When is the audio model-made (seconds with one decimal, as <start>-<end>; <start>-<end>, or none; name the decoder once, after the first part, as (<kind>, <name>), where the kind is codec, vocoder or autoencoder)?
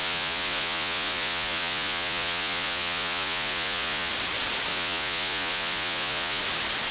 0.0-4.1 (vocoder, Vocos); 4.7-6.4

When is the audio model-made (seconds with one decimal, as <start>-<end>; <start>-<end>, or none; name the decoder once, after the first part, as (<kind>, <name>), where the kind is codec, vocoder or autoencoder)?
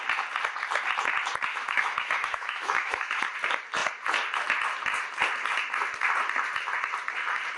1.5-3.2 (autoencoder, DAC-VAE)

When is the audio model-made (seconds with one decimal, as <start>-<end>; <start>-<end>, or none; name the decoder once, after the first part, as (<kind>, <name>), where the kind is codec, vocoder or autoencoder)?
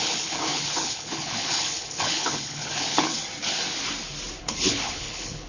0.0-3.1 (codec, HILCodec); 4.4-5.5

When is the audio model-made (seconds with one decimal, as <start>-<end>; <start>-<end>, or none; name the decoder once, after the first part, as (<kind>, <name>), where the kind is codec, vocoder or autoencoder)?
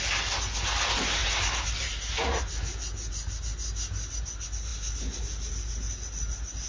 1.2-2.4 (vocoder, BigVGAN v2)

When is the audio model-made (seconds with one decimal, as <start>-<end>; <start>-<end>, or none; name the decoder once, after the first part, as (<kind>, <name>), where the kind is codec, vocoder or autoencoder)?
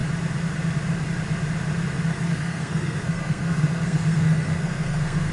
2.1-5.3 (codec, SNAC)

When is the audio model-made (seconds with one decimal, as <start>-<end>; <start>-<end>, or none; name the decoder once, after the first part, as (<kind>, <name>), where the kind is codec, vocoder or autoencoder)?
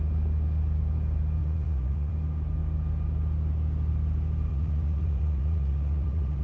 1.4-2.1 (vocoder, Vocos); 4.5-6.4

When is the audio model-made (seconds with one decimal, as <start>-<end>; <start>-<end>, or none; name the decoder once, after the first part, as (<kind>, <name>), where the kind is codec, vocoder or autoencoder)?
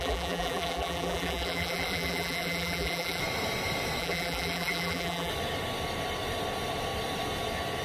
0.0-3.2 (vocoder, BigVGAN v2); 4.0-5.3